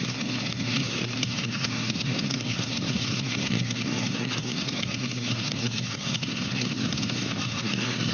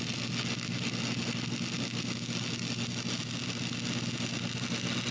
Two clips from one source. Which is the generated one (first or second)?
first